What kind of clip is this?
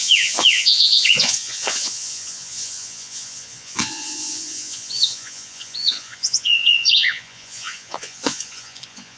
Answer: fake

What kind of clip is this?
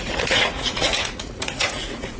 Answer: fake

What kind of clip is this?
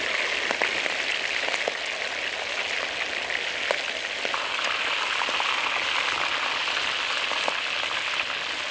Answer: real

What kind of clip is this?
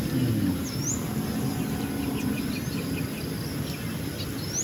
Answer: real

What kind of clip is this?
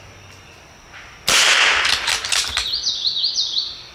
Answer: real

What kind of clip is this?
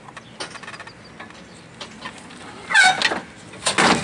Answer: real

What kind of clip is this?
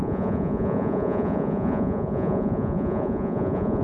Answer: fake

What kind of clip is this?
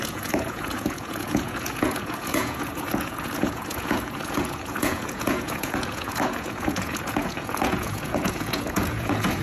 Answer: fake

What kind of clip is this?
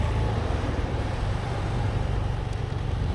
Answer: fake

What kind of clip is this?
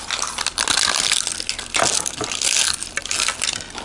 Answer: real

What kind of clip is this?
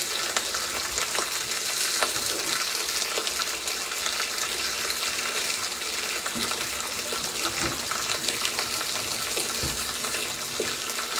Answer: real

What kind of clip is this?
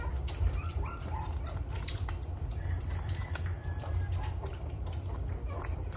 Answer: fake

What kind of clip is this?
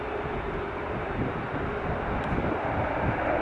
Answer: real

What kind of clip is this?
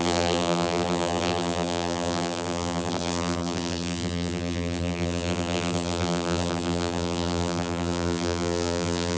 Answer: fake